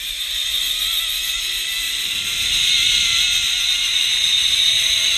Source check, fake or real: real